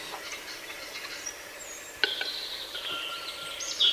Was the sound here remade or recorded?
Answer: recorded